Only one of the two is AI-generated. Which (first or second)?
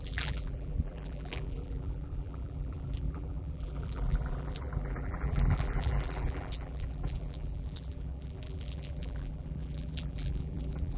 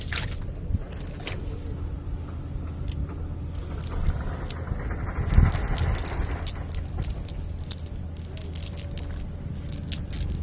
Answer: first